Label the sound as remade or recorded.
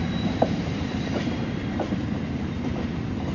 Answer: remade